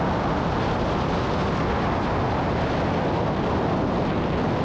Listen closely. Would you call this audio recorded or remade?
recorded